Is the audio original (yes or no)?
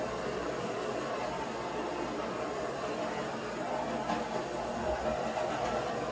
yes